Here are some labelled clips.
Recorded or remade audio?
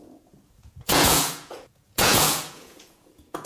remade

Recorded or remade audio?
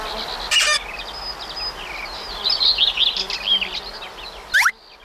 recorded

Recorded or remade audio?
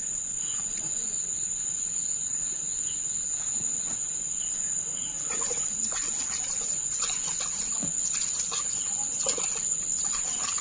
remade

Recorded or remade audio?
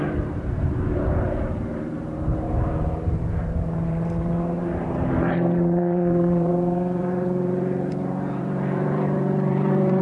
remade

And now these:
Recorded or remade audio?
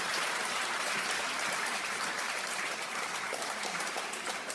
remade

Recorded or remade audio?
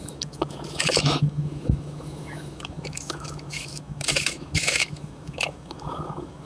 remade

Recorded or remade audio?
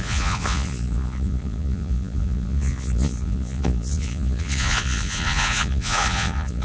remade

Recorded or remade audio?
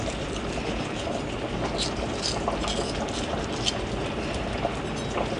recorded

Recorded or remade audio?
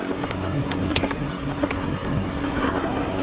remade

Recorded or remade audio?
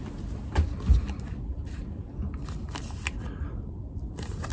remade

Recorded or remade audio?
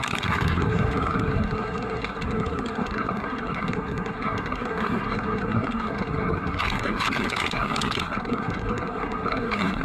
remade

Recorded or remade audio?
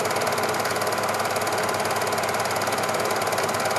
recorded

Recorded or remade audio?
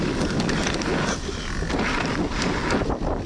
recorded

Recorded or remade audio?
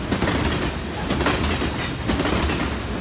recorded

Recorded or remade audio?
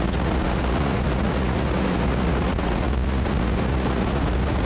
remade